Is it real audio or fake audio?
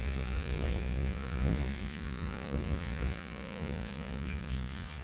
fake